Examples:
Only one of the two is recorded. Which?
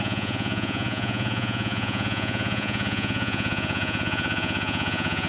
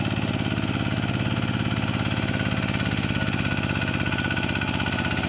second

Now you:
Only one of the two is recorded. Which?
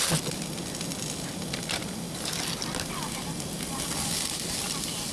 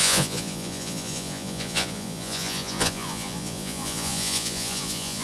first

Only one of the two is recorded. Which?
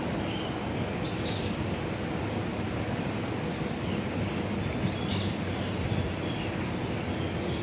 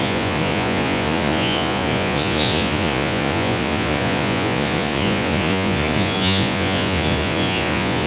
first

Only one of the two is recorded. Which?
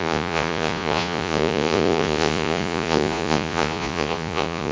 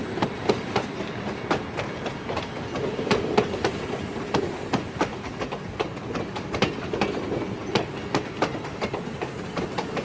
second